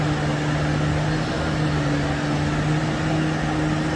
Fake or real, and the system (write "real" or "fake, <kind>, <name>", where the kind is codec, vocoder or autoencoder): real